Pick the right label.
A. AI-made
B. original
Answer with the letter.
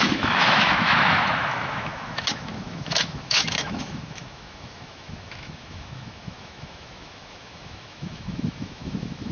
A